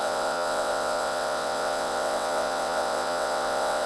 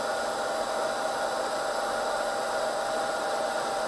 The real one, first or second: second